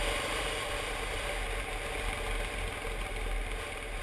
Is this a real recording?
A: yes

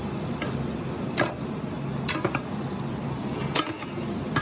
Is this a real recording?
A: yes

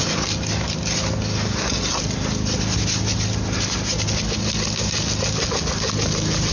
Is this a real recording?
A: yes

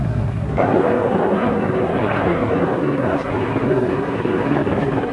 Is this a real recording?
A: no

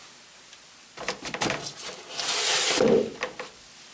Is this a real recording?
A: yes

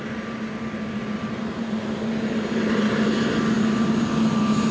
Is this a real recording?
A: yes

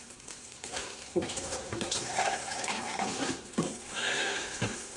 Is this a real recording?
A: no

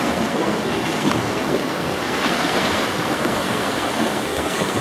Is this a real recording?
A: no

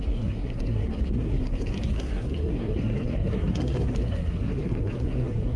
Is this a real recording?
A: no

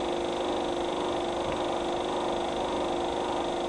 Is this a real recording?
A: yes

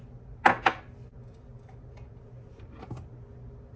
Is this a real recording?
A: yes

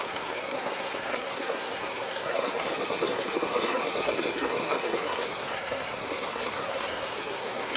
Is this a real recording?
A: no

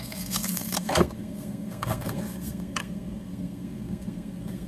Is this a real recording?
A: no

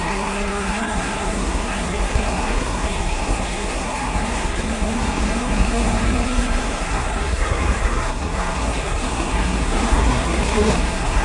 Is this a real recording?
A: no